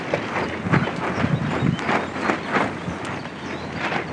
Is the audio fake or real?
real